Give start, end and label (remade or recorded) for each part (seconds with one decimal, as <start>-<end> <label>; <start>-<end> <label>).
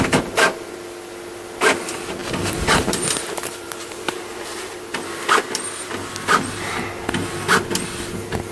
0.0-2.2 recorded; 2.2-4.9 remade; 4.9-8.5 recorded